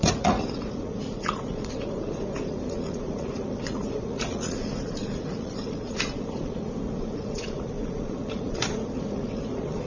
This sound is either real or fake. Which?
fake